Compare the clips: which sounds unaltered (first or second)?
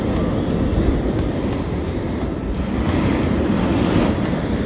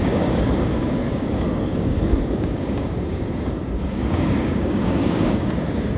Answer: first